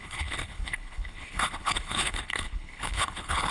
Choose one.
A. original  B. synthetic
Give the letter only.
B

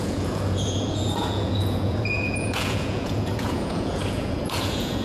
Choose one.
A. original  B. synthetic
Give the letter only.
B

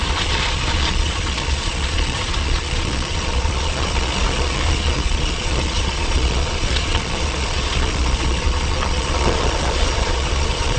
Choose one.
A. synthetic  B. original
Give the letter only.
A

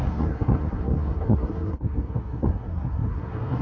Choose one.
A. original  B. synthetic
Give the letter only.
B